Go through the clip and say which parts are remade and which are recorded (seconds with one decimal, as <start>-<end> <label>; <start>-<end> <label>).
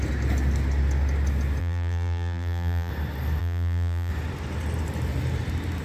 0.0-1.6 recorded; 1.6-2.9 remade; 2.9-3.4 recorded; 3.4-4.1 remade; 4.1-5.8 recorded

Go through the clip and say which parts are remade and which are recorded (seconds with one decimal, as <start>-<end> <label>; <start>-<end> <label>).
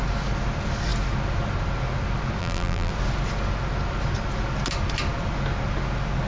0.0-2.4 recorded; 2.4-2.9 remade; 2.9-6.3 recorded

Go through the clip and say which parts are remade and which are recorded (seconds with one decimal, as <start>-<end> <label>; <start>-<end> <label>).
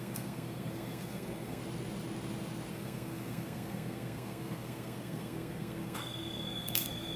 0.0-1.6 remade; 1.6-2.7 recorded; 2.7-7.2 remade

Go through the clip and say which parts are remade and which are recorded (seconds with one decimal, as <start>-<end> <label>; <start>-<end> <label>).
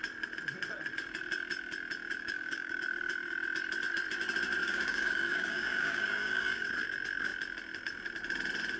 0.0-2.2 recorded; 2.2-2.8 remade; 2.8-4.6 recorded; 4.6-6.7 remade; 6.7-8.8 recorded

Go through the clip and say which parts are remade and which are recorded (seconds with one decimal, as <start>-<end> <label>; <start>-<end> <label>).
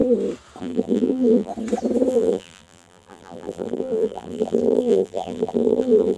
0.0-0.6 recorded; 0.6-1.5 remade; 1.5-2.1 recorded; 2.1-6.2 remade